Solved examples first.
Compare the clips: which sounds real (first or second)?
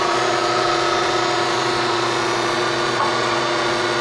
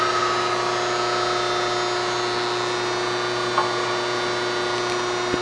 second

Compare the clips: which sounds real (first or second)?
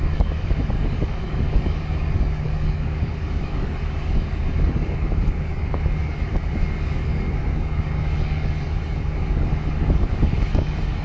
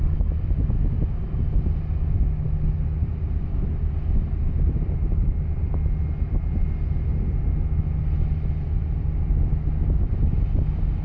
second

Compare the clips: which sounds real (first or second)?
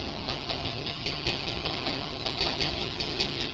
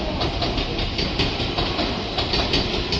second